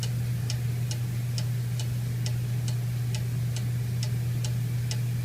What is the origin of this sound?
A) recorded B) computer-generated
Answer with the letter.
A